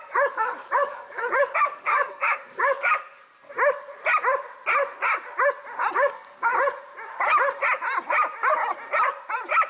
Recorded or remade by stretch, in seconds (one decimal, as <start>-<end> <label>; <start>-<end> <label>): 0.0-3.3 remade; 3.3-5.9 recorded; 5.9-6.5 remade; 6.5-9.7 recorded